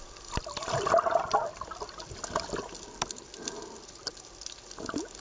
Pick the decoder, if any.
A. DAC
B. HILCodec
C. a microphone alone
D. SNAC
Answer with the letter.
C